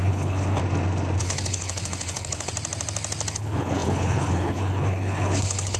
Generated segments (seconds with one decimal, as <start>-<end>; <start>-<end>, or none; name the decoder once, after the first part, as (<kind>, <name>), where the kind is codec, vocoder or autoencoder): 0.0-0.6 (codec, HILCodec); 1.2-2.5; 3.3-5.8